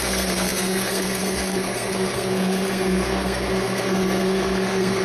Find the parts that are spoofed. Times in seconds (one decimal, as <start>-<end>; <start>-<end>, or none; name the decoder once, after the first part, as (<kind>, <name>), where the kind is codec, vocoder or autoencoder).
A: 0.0-5.0 (codec, SNAC)